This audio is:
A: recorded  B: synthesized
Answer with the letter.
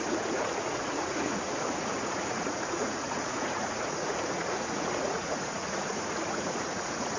B